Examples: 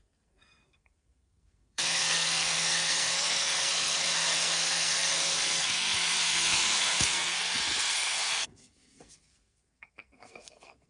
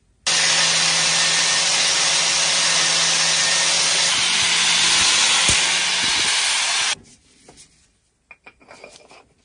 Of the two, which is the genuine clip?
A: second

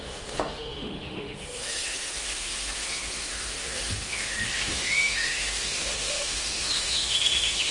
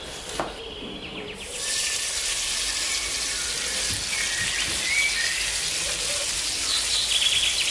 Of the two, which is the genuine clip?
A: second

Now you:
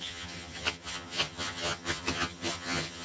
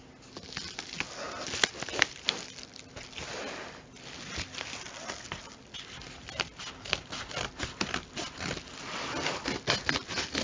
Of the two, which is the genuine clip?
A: second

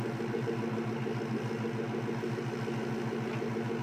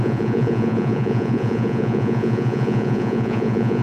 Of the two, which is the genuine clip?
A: first